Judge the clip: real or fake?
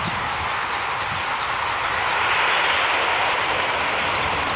real